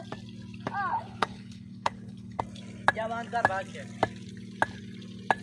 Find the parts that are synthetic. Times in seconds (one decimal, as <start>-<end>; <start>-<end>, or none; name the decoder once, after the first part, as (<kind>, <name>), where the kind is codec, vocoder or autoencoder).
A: 0.9-2.4 (codec, HILCodec)